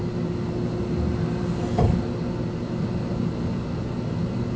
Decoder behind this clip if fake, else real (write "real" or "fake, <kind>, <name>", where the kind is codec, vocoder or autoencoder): real